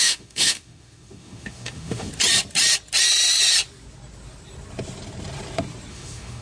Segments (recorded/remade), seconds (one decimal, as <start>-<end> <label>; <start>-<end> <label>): 0.0-2.1 remade; 2.1-5.9 recorded; 5.9-6.4 remade